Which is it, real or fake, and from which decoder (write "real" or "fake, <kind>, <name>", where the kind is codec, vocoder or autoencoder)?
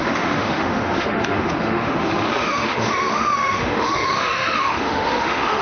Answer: fake, autoencoder, DAC-VAE